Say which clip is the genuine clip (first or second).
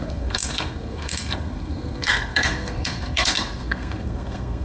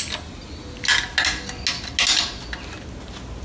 second